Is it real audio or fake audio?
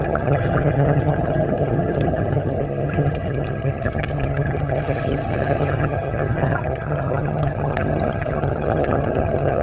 fake